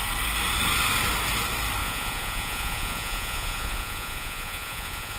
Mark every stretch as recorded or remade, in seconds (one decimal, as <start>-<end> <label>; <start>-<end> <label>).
0.0-1.8 recorded; 1.8-5.2 remade